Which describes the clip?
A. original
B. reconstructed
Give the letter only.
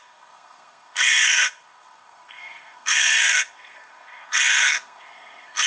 B